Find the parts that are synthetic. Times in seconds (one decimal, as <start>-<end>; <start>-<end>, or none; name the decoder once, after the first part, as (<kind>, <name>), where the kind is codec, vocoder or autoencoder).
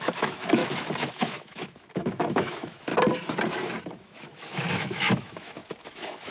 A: 0.0-0.6 (autoencoder, DAC-VAE); 1.1-2.9; 3.8-6.3